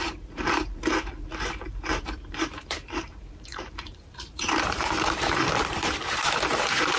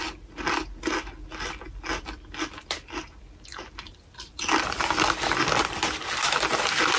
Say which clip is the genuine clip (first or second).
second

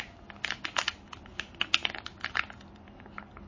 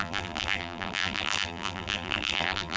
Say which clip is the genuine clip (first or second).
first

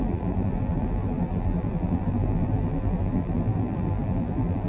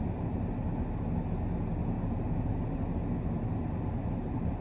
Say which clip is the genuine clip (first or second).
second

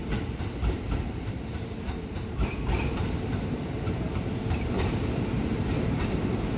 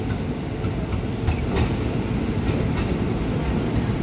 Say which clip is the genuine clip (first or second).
second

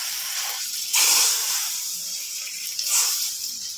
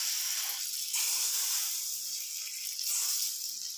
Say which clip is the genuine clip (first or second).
second